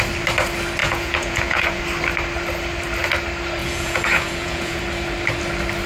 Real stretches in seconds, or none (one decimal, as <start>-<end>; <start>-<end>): 0.0-0.8; 1.8-3.6; 4.8-5.9